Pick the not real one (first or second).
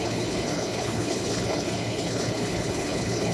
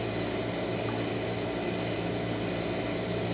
first